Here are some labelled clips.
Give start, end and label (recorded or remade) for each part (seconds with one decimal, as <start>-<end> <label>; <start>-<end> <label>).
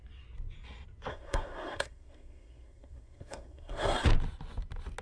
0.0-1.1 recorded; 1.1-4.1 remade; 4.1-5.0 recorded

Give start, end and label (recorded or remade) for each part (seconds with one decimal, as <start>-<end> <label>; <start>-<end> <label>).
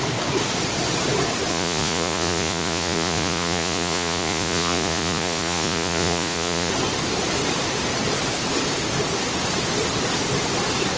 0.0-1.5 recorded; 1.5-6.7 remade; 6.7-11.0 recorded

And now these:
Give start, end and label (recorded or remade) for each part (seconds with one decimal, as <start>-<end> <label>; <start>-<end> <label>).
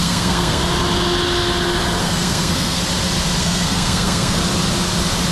0.0-0.6 remade; 0.6-2.0 recorded; 2.0-2.8 remade; 2.8-3.4 recorded; 3.4-4.4 remade; 4.4-5.3 recorded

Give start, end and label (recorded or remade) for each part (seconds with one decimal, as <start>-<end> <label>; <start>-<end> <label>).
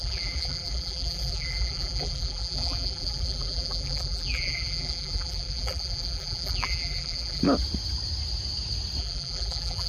0.0-7.4 remade; 7.4-9.0 recorded; 9.0-9.9 remade